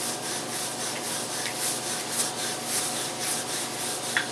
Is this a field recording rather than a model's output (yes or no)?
yes